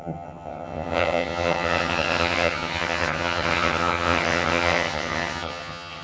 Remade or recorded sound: remade